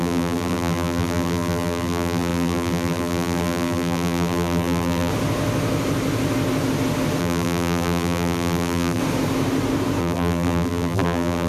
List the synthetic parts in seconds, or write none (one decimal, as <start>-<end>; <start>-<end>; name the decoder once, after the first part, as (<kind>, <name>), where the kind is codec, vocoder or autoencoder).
0.0-5.1 (vocoder, BigVGAN v2); 7.2-9.0; 10.0-11.5